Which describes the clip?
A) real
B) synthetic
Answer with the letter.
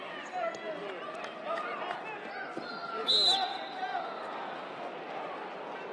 A